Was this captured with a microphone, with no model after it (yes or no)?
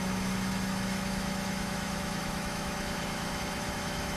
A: no